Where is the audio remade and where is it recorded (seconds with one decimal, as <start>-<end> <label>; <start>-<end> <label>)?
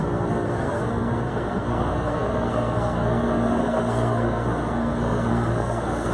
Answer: 0.0-6.1 remade